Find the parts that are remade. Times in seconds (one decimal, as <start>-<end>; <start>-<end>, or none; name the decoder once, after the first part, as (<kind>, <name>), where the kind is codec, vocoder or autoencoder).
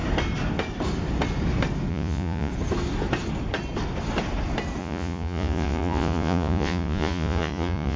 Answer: 1.9-2.5 (vocoder, Vocos); 4.8-8.0